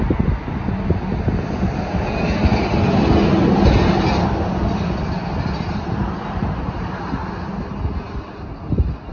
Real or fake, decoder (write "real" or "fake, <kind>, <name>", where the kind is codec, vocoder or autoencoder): real